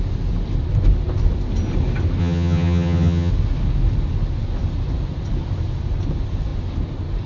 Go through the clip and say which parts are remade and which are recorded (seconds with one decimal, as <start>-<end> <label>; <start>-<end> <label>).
0.0-2.2 recorded; 2.2-3.3 remade; 3.3-7.3 recorded